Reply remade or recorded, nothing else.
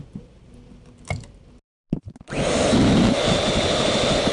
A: recorded